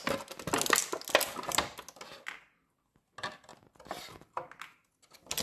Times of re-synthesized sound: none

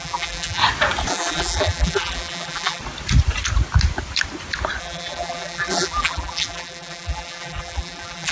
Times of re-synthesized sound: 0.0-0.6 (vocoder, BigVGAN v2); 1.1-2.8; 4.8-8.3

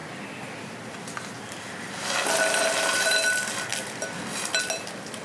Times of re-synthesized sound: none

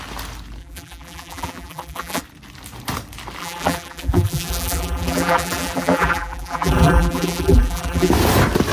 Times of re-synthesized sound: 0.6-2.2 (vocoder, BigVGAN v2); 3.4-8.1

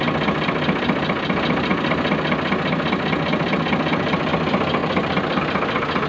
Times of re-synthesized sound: none

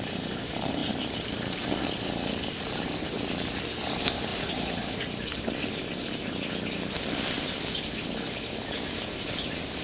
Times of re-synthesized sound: 0.0-0.8 (vocoder, BigVGAN v2); 2.5-4.3; 9.3-9.8